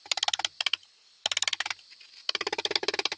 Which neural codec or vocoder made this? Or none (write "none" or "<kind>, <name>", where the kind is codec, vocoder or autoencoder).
none